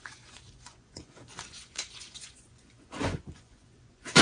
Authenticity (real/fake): fake